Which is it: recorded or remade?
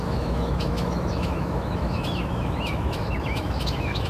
remade